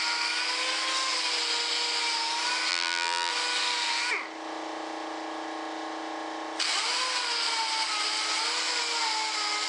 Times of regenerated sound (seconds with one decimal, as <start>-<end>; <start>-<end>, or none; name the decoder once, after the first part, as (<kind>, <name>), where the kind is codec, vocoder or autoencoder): 2.7-3.3 (vocoder, BigVGAN v2)